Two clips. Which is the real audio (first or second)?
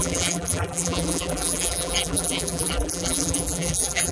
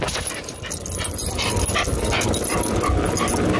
second